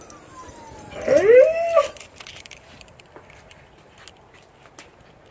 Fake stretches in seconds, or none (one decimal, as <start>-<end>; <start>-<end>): 0.4-3.6